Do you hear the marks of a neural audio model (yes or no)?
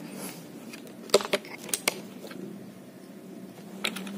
no